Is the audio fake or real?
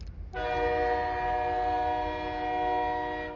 real